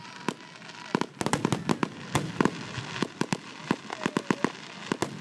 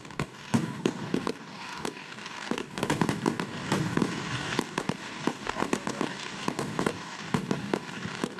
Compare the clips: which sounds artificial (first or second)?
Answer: second